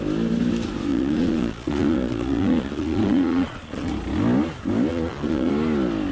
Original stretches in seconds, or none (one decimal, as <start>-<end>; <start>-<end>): 0.0-0.9; 3.9-4.9; 5.5-6.1